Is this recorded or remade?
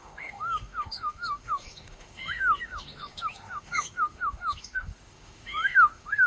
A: remade